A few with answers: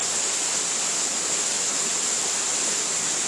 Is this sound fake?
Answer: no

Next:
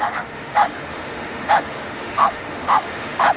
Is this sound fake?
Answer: yes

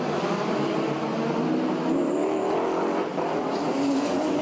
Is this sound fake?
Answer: no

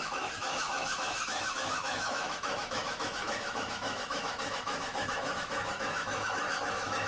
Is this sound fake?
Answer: yes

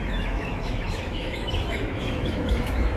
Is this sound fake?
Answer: yes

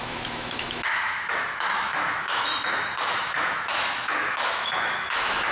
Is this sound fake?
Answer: yes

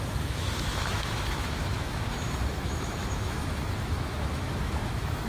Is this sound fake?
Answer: yes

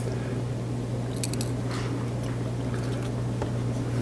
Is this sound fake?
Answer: no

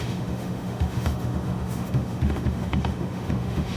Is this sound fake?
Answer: yes